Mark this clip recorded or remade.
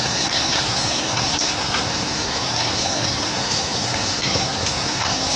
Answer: remade